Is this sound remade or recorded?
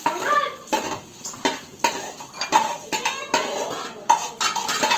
recorded